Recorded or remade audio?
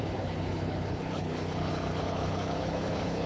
remade